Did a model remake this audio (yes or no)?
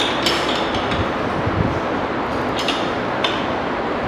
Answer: no